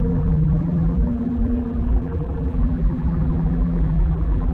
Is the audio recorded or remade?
remade